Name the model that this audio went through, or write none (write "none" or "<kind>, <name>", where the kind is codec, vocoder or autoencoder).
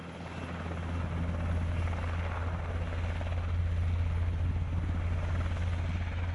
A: none